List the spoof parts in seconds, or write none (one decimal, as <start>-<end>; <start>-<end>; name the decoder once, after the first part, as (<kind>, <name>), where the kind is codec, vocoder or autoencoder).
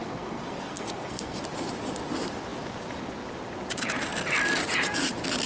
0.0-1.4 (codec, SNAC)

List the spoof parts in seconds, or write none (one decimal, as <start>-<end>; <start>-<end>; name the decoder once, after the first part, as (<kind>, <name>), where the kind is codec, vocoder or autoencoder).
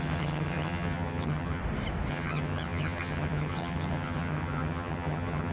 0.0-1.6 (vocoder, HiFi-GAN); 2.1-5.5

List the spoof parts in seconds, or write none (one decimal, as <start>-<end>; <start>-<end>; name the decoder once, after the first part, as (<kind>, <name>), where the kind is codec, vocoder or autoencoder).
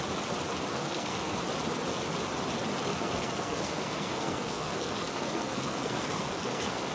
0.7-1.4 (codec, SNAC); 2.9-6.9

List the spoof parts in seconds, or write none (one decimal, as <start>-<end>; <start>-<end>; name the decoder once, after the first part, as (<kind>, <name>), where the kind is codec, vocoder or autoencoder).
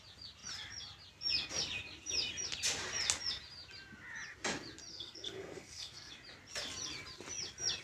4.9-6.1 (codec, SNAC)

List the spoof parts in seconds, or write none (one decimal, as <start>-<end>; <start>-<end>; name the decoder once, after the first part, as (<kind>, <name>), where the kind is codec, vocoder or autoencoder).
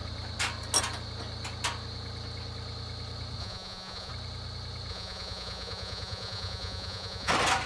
3.4-4.1 (vocoder, Vocos); 4.9-7.3